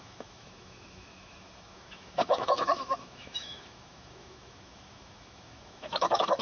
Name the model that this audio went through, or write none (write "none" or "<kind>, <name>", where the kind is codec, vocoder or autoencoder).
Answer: autoencoder, DAC-VAE